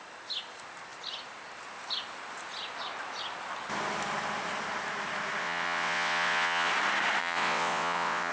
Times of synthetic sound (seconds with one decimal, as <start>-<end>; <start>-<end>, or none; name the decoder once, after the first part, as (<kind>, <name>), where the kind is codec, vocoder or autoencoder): 5.4-6.7 (vocoder, WaveNeXt); 7.2-8.3